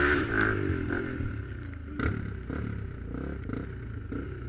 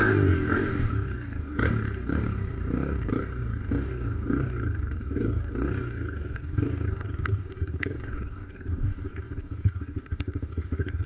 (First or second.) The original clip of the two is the first